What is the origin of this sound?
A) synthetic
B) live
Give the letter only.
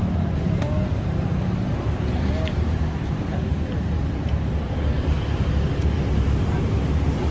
B